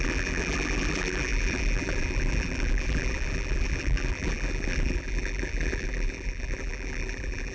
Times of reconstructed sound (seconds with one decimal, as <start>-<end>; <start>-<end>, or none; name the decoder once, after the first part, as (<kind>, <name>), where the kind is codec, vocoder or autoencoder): 0.0-7.5 (vocoder, BigVGAN v2)